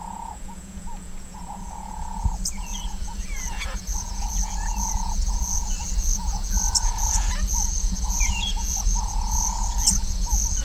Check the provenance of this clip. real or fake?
fake